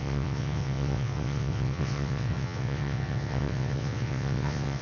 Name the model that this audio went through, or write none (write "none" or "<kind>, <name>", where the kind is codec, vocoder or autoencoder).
vocoder, WaveNeXt